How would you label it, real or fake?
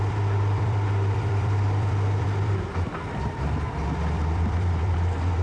fake